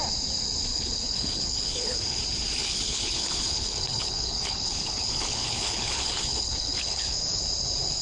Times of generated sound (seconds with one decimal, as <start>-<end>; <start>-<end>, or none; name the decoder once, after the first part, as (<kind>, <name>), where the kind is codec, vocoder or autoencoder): 0.7-2.2 (codec, HILCodec); 2.6-7.4